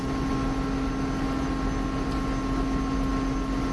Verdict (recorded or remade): recorded